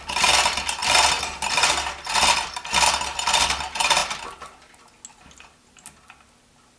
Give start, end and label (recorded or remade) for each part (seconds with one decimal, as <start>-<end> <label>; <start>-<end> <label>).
0.0-6.8 recorded

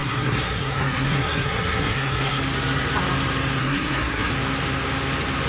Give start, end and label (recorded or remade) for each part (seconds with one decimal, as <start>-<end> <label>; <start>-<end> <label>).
0.0-2.4 remade; 2.4-3.6 recorded; 3.6-4.3 remade; 4.3-5.5 recorded

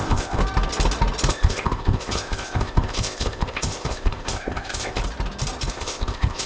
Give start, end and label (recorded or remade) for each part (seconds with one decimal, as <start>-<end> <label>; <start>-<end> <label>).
0.0-0.4 remade; 0.4-1.3 recorded; 1.3-5.0 remade; 5.0-5.7 recorded; 5.7-6.5 remade